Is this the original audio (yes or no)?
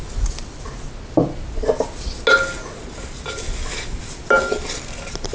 yes